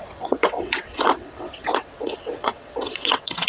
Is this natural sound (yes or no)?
no